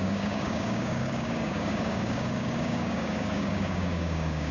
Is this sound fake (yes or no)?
yes